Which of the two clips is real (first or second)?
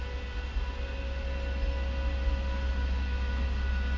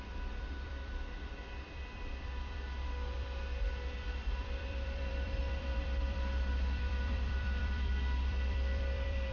first